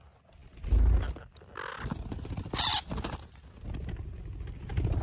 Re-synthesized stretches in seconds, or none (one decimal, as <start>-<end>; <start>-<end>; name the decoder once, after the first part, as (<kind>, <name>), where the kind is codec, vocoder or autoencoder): none